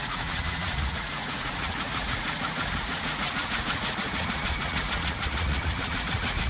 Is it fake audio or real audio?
fake